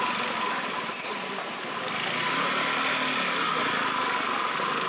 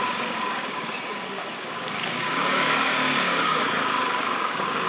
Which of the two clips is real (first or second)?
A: first